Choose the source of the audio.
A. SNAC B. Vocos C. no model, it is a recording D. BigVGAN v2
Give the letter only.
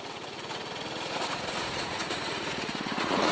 B